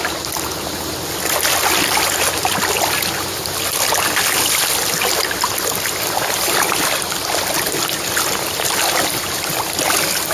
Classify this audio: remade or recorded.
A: recorded